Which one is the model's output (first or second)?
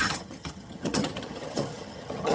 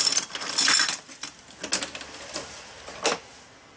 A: first